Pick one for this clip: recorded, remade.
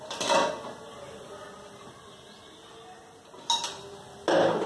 recorded